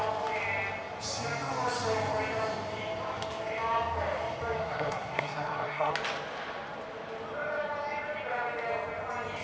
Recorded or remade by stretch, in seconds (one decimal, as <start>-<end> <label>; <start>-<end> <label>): 0.0-4.6 recorded; 4.6-5.9 remade; 5.9-9.4 recorded